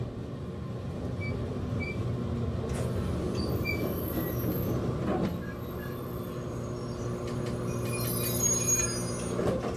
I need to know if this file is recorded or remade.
recorded